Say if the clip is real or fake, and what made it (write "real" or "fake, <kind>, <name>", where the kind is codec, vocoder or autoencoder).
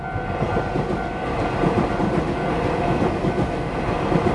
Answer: real